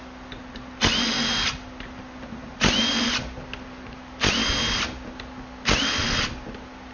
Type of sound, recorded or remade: recorded